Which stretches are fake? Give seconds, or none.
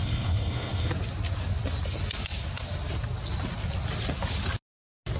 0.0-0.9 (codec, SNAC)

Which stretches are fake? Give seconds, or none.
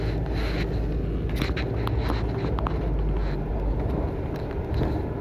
3.2-4.7 (vocoder, BigVGAN v2)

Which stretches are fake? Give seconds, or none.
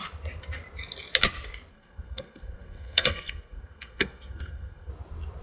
1.7-4.9 (codec, SNAC)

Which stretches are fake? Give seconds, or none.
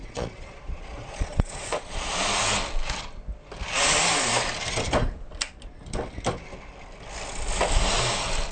0.0-2.1 (vocoder, Vocos)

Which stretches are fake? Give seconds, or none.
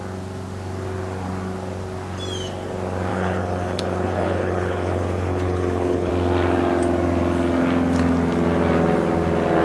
3.1-6.1 (codec, HILCodec)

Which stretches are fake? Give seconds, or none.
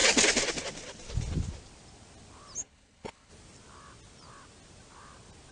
2.6-3.3 (codec, HILCodec)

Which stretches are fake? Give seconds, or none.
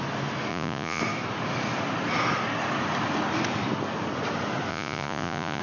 0.5-1.0 (vocoder, Vocos); 4.7-5.6